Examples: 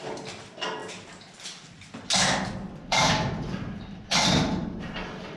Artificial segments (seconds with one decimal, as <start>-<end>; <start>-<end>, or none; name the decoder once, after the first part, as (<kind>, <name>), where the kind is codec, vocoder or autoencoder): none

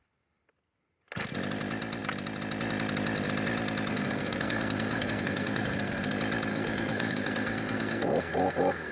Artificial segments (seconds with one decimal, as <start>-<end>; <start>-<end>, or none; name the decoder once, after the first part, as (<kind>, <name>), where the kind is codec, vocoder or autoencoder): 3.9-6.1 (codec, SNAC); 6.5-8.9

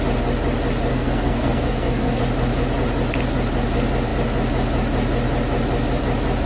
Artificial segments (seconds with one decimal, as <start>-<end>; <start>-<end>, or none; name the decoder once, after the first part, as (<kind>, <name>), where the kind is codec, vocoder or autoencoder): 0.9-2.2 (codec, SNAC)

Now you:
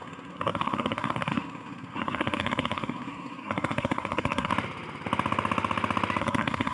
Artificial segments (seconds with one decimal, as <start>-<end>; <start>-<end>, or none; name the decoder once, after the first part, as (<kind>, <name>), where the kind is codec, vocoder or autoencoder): 0.0-4.5 (codec, SNAC); 6.2-6.7

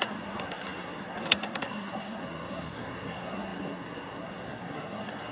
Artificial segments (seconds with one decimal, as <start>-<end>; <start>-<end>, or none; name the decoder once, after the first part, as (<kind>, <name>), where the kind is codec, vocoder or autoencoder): 0.0-5.3 (codec, SNAC)

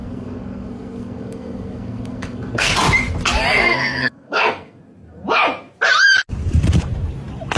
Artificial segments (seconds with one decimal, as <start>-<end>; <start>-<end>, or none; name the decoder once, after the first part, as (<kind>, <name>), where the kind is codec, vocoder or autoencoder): 0.0-2.7 (codec, SNAC); 3.6-4.8

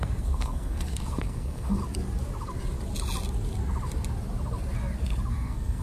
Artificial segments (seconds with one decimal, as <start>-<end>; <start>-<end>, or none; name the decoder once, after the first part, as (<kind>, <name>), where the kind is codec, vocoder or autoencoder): 0.0-1.8 (codec, SNAC); 5.3-5.8

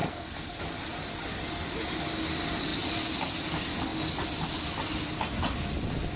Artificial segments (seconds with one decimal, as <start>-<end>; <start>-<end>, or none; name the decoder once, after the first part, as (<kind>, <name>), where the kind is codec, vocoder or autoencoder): 0.0-0.6 (codec, SNAC)